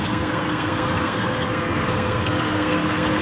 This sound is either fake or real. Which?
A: fake